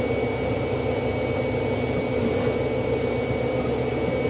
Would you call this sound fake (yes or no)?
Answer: no